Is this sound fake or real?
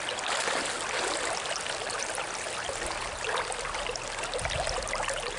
real